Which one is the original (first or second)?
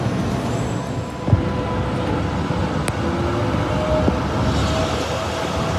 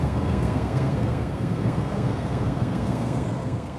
first